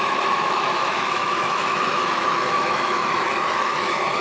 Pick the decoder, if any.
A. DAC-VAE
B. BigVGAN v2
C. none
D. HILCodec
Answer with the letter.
A